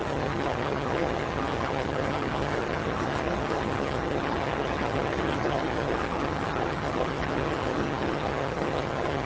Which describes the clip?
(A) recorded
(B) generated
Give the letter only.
B